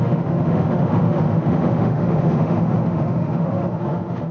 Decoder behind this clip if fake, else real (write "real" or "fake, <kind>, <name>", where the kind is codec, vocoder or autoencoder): fake, autoencoder, DAC-VAE